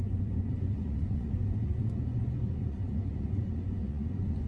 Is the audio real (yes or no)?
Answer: no